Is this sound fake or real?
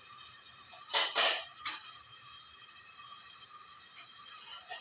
fake